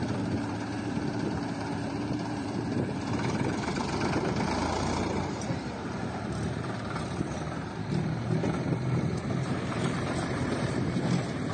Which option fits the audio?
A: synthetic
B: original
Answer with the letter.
A